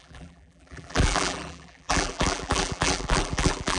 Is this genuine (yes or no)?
no